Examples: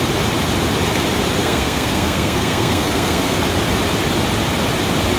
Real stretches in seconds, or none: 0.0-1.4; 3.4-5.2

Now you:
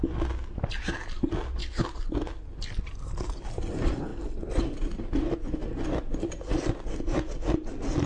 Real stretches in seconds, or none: 0.0-8.1

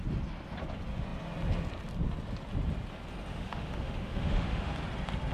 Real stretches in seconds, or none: 0.0-3.3; 4.7-5.3